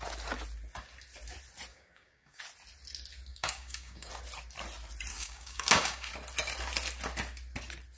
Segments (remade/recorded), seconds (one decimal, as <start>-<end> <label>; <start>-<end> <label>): 0.0-1.7 recorded; 1.7-2.4 remade; 2.4-3.3 recorded; 3.3-4.1 remade; 4.1-5.1 recorded; 5.1-6.1 remade; 6.1-8.0 recorded